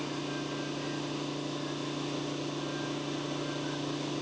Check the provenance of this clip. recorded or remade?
recorded